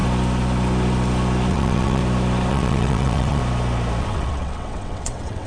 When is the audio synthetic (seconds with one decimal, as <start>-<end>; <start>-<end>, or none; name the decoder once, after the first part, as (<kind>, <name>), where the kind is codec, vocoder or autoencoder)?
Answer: 1.5-2.0 (vocoder, WaveNeXt); 2.5-3.4; 4.0-5.5